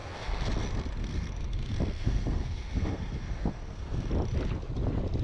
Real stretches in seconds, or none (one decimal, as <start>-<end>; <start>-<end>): 0.5-1.0; 4.1-5.2